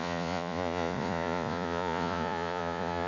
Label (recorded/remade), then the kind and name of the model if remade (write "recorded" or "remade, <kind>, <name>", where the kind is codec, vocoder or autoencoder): remade, vocoder, Vocos